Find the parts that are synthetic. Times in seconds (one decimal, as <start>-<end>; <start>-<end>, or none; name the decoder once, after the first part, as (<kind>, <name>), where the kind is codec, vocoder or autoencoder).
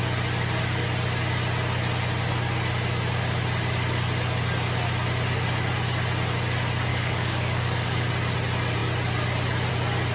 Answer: 6.9-8.1 (codec, DAC)